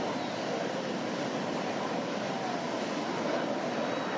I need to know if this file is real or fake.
real